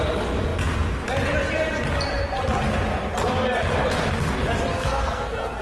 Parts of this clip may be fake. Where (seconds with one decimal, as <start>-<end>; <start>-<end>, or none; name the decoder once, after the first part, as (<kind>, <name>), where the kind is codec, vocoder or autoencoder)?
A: 4.7-5.6 (codec, SNAC)